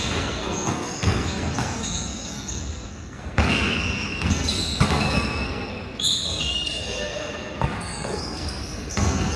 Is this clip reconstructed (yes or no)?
yes